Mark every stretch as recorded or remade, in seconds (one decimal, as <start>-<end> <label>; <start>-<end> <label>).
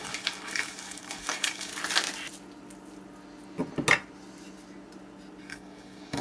0.0-1.7 remade; 1.7-5.4 recorded; 5.4-6.2 remade